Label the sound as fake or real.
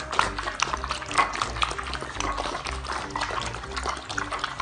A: real